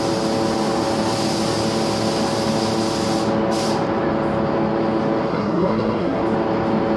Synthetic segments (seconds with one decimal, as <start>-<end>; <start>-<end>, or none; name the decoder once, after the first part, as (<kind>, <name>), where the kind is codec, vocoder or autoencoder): 5.3-6.2 (codec, SNAC)